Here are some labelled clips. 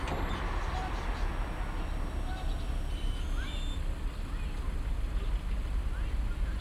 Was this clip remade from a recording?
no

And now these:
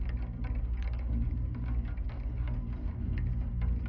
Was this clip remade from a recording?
no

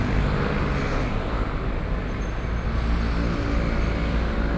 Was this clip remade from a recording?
no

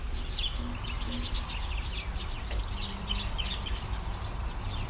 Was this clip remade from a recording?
no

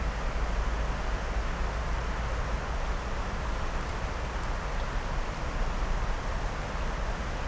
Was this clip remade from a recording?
no